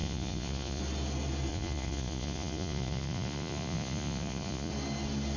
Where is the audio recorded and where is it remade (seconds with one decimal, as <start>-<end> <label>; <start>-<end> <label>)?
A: 0.0-0.8 remade; 0.8-1.5 recorded; 1.5-4.7 remade; 4.7-5.4 recorded